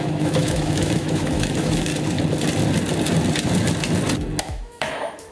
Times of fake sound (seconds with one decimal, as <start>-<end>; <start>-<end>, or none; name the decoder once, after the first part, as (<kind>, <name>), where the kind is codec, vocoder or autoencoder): 0.0-1.9 (autoencoder, DAC-VAE); 4.4-5.3